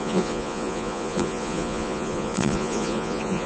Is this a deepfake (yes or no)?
yes